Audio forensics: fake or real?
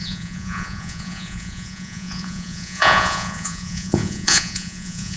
fake